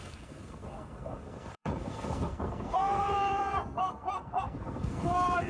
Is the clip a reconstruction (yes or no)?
yes